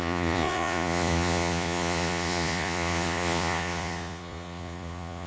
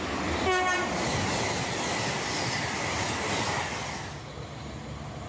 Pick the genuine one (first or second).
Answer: second